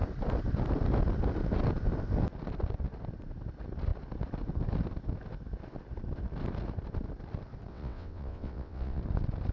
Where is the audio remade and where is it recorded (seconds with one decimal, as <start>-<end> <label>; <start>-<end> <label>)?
0.0-7.7 recorded; 7.7-9.0 remade; 9.0-9.5 recorded